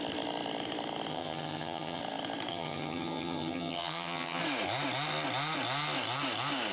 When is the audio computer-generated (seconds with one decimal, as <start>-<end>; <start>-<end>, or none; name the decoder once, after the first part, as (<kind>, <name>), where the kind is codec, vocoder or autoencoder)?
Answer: 1.1-2.0 (vocoder, HiFi-GAN); 2.5-4.4